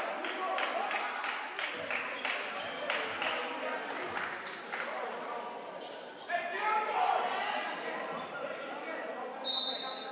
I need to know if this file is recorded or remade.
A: recorded